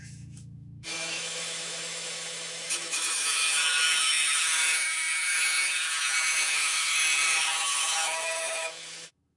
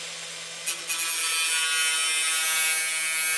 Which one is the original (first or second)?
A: second